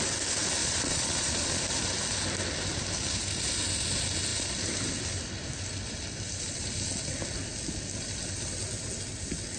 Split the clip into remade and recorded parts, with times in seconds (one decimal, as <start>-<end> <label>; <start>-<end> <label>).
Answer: 0.0-0.6 recorded; 0.6-1.6 remade; 1.6-9.6 recorded